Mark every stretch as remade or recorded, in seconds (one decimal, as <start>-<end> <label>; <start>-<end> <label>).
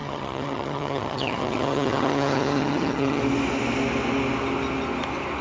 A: 0.0-3.2 remade; 3.2-5.4 recorded